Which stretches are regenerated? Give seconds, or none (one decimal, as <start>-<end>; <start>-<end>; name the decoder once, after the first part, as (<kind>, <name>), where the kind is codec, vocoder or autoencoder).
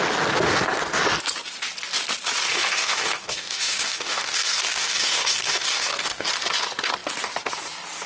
2.5-6.3 (codec, DAC)